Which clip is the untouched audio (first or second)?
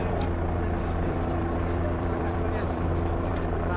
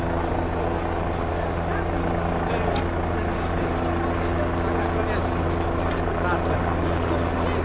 second